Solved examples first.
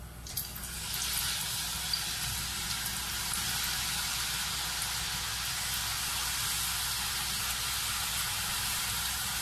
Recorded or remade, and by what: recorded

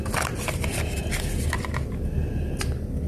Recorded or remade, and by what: recorded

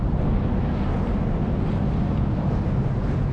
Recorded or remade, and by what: recorded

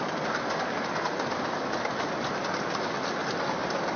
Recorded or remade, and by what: recorded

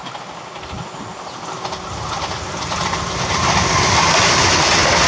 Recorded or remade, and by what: recorded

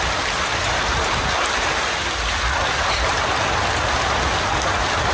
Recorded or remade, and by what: recorded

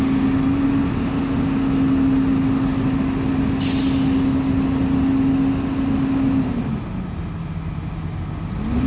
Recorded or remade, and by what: recorded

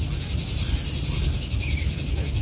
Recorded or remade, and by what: recorded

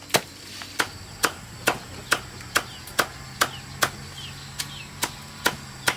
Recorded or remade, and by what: recorded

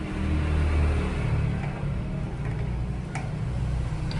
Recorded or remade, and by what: recorded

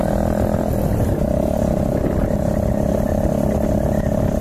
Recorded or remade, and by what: recorded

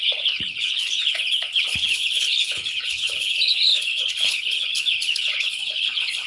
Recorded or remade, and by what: remade, codec, HILCodec